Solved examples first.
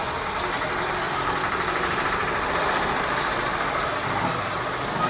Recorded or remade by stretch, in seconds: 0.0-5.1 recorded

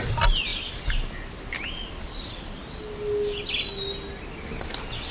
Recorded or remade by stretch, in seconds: 0.0-5.1 recorded

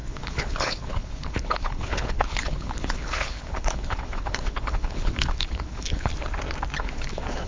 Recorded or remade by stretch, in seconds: 0.0-6.1 remade; 6.1-6.8 recorded; 6.8-7.5 remade

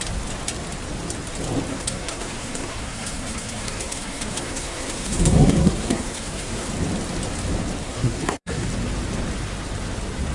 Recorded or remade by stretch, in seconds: 0.0-1.7 recorded; 1.7-6.7 remade; 6.7-7.8 recorded; 7.8-8.7 remade; 8.7-10.3 recorded

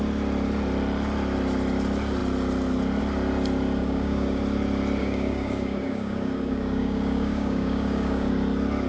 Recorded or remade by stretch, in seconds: 0.0-3.8 recorded; 3.8-4.4 remade; 4.4-5.0 recorded; 5.0-8.3 remade; 8.3-8.9 recorded